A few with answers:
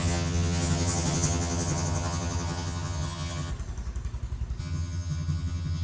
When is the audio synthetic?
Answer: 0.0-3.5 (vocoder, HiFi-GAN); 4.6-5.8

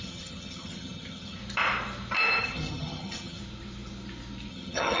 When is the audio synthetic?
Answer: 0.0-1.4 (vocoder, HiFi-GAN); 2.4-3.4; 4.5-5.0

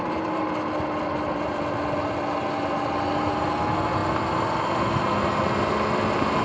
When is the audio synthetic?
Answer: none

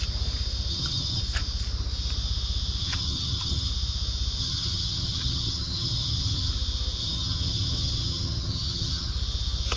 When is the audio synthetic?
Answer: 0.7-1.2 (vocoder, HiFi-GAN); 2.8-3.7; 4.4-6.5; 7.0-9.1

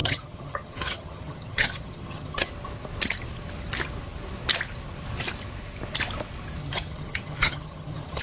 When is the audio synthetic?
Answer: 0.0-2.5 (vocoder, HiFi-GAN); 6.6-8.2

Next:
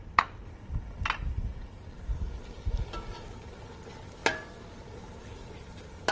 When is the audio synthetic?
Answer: none